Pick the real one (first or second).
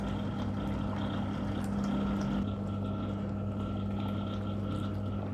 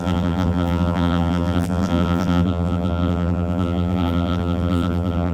first